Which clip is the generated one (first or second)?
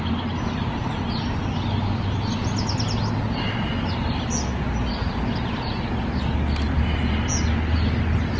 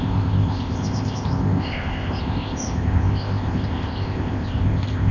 second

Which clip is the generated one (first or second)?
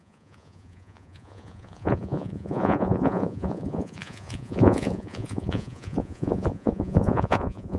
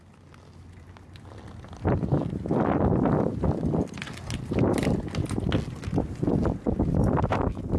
first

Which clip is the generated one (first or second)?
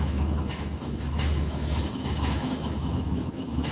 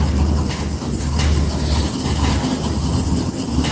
first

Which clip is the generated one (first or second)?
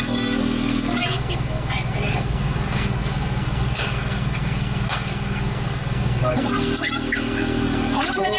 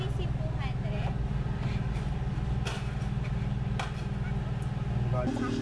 first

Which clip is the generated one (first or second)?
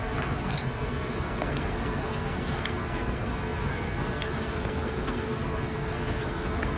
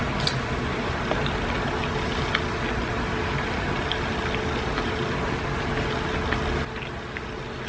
first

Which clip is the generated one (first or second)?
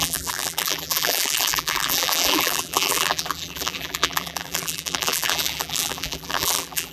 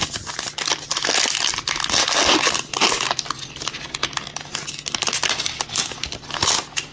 first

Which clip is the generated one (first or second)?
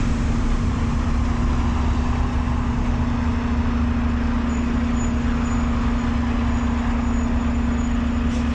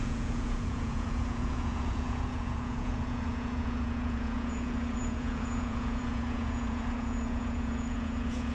second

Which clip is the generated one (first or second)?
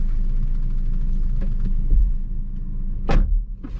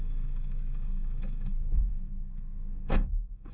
second